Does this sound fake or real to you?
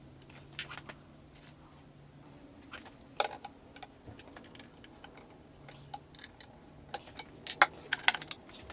real